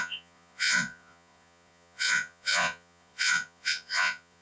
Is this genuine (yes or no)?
no